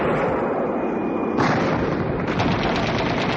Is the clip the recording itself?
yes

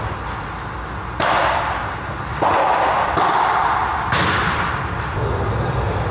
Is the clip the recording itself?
yes